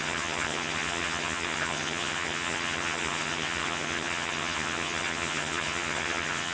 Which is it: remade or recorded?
remade